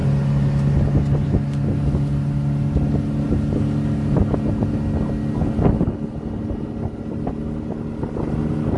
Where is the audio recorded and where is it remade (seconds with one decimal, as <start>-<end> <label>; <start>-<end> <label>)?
0.0-8.8 recorded